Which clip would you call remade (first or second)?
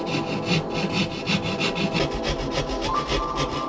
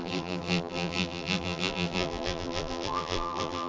second